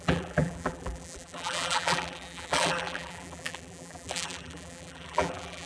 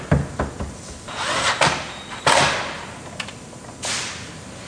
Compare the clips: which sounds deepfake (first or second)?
first